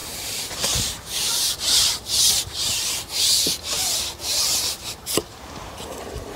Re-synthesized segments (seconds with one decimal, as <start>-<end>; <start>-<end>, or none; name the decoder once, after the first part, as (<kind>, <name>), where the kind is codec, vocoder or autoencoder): 0.0-2.8 (vocoder, BigVGAN v2); 4.3-5.7